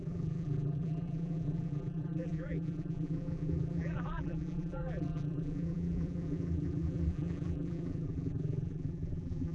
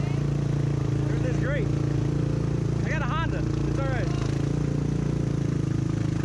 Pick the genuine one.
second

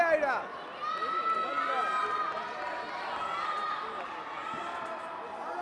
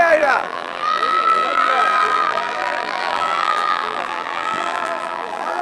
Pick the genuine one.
first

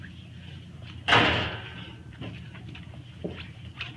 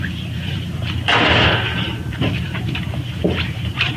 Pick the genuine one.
first